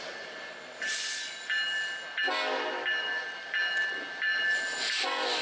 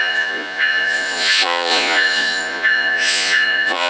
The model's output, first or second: second